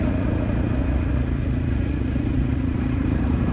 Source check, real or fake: fake